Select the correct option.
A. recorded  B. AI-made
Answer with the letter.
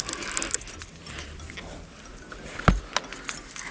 A